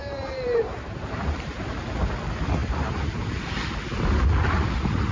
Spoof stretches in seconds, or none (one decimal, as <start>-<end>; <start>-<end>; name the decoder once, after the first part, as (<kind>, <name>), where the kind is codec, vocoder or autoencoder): 0.0-1.8 (vocoder, BigVGAN v2); 2.6-5.1